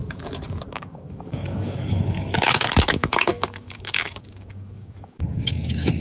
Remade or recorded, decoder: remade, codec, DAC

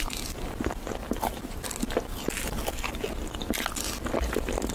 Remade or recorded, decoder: recorded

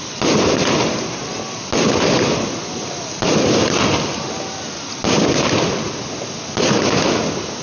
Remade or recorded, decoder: recorded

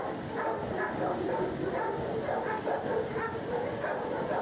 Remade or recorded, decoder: recorded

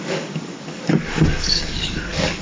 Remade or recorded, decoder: remade, codec, DAC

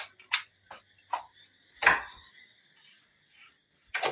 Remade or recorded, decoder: recorded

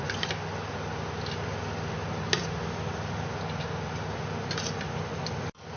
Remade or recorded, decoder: recorded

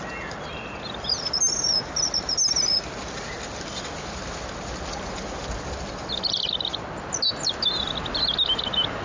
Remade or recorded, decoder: recorded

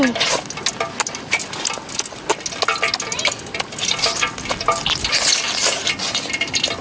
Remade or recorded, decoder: recorded